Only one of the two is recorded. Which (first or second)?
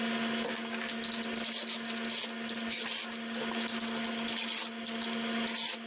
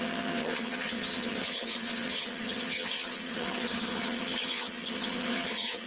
first